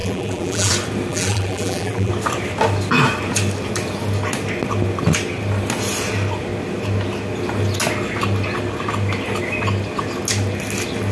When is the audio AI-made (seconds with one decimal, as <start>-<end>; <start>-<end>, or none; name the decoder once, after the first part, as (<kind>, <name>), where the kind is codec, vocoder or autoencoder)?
0.0-0.7 (vocoder, BigVGAN v2); 1.1-2.1